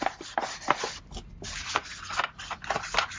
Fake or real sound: real